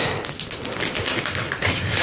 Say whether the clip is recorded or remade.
recorded